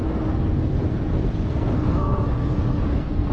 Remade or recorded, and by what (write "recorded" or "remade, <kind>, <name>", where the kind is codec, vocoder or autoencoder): remade, codec, SNAC